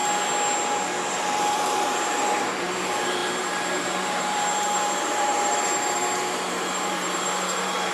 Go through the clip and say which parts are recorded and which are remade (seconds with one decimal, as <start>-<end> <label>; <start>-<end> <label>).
0.0-1.1 recorded; 1.1-7.9 remade